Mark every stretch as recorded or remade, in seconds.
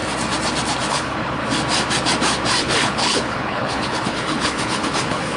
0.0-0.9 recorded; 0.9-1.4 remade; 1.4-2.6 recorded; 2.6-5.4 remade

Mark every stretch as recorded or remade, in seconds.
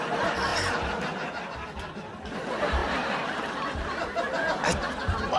0.0-5.4 recorded